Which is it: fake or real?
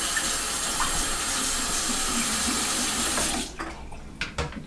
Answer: real